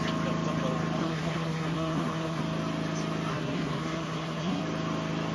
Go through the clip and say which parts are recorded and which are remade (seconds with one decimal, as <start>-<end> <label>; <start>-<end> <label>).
0.0-1.0 recorded; 1.0-2.4 remade; 2.4-3.3 recorded; 3.3-4.6 remade; 4.6-5.3 recorded